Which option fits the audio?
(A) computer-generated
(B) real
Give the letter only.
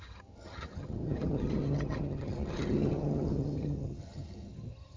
A